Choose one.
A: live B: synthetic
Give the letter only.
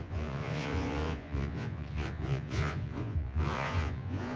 B